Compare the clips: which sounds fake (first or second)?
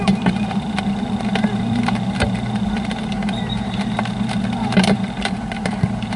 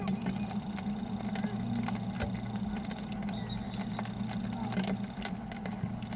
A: first